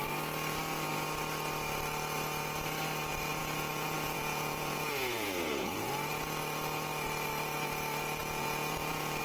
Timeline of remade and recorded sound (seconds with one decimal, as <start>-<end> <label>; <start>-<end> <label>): 0.0-3.4 recorded; 3.4-5.9 remade; 5.9-8.2 recorded; 8.2-9.2 remade